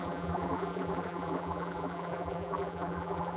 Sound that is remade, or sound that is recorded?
remade